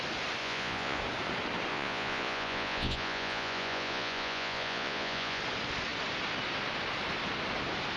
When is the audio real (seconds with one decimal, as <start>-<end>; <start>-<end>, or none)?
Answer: 0.0-0.4; 1.0-1.7; 5.4-8.0